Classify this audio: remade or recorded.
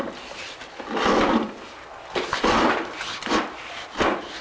recorded